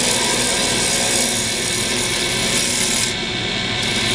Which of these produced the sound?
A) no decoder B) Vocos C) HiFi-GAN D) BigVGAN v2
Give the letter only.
A